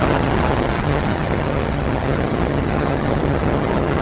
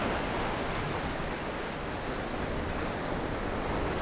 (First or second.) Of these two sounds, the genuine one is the second